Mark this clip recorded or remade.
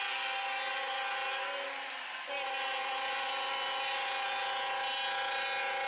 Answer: recorded